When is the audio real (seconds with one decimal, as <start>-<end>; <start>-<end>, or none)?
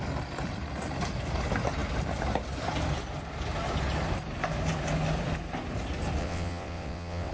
0.0-6.2